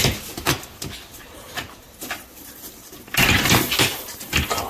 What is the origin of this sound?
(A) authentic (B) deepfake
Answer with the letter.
A